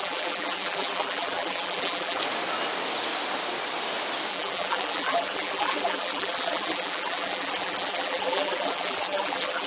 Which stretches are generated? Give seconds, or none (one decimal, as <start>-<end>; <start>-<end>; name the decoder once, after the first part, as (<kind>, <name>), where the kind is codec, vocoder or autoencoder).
0.0-2.2 (vocoder, BigVGAN v2); 4.3-9.7